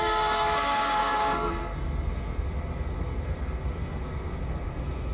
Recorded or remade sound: remade